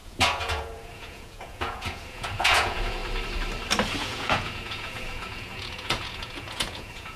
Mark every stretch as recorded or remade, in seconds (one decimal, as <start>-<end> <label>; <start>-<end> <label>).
0.0-3.0 remade; 3.0-4.0 recorded; 4.0-7.2 remade